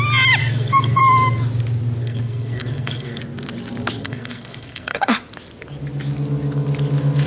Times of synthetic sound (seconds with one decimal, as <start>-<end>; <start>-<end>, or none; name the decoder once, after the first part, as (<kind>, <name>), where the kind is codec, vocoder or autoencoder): 0.4-1.0 (codec, SNAC); 2.0-3.2; 4.0-5.2